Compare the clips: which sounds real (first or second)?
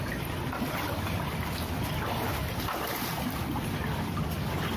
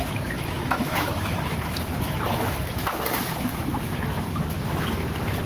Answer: first